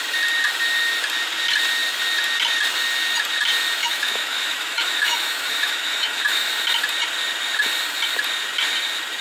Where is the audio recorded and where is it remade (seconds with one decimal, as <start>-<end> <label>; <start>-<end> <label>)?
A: 0.0-3.8 recorded; 3.8-6.5 remade; 6.5-9.2 recorded